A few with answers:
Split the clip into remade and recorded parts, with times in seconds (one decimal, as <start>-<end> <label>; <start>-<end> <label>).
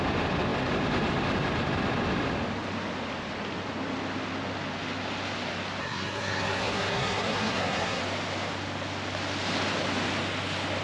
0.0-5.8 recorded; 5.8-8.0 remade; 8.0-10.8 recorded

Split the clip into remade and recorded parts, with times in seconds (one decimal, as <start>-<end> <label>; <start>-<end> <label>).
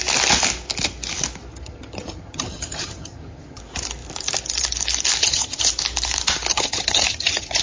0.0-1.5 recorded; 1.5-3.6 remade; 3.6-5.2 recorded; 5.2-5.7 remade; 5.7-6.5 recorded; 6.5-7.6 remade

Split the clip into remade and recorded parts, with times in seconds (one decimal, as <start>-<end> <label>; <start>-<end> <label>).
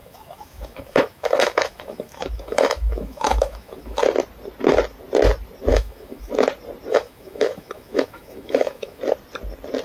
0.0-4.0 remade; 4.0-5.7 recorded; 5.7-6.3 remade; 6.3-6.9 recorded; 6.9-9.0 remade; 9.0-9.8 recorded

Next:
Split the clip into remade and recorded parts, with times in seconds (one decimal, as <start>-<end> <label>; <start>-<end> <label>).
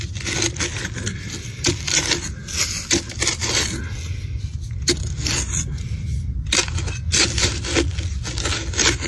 0.0-9.1 recorded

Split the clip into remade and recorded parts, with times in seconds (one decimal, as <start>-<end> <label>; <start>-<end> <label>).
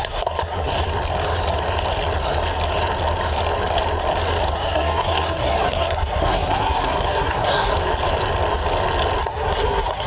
0.0-0.7 remade; 0.7-4.5 recorded; 4.5-7.7 remade; 7.7-9.2 recorded; 9.2-10.1 remade